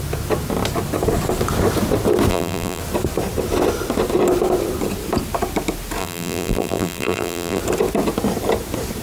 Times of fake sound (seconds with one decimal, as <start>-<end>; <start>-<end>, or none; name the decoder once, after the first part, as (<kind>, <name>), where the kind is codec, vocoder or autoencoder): 2.3-2.8 (vocoder, BigVGAN v2); 6.0-7.6